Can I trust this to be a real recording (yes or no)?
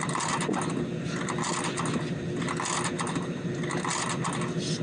yes